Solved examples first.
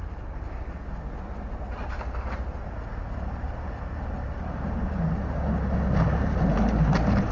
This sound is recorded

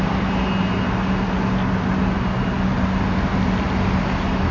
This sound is recorded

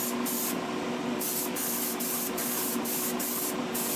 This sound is recorded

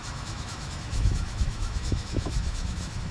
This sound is remade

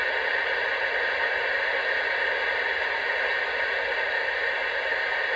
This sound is recorded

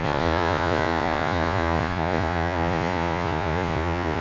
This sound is remade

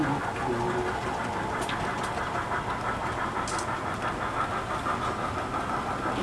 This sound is recorded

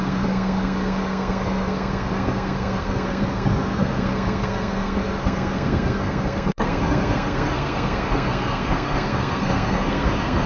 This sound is remade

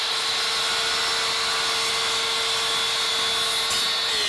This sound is recorded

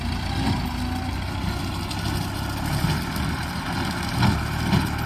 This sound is recorded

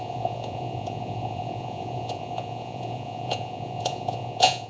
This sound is remade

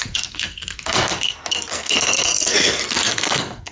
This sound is remade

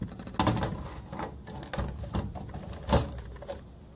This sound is recorded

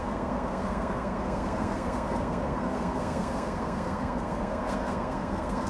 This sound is remade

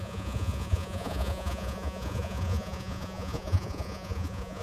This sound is remade